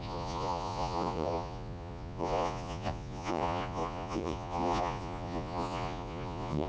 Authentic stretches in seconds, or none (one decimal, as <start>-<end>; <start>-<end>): none